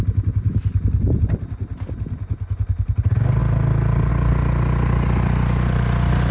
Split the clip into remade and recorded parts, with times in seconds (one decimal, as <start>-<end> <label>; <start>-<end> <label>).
0.0-6.3 recorded

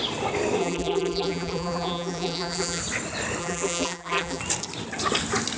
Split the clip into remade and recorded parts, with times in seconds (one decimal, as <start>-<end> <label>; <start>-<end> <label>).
0.0-0.6 recorded; 0.6-2.8 remade; 2.8-3.4 recorded; 3.4-4.4 remade; 4.4-5.6 recorded

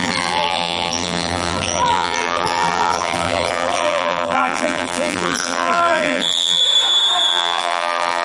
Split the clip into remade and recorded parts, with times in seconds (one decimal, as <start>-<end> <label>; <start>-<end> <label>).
0.0-6.6 remade; 6.6-7.3 recorded; 7.3-8.2 remade

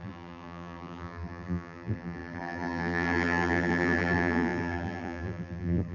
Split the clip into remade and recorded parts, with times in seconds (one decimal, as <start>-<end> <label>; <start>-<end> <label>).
0.0-5.9 remade

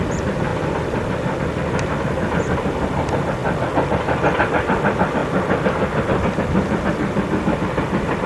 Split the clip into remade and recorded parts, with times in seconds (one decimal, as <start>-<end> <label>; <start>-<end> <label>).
0.0-3.4 remade; 3.4-4.6 recorded; 4.6-8.3 remade